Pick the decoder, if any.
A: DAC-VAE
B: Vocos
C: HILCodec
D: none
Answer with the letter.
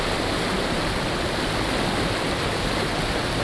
D